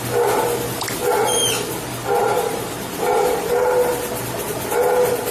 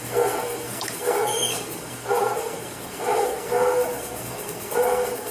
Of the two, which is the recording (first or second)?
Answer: first